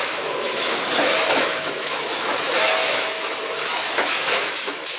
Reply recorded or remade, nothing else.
remade